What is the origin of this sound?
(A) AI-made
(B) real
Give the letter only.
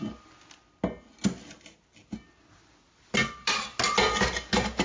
B